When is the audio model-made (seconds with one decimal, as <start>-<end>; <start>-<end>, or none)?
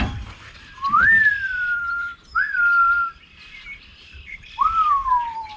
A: 0.0-2.1; 4.0-5.6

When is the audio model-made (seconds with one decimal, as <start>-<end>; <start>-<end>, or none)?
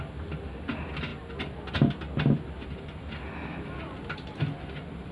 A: 1.1-1.7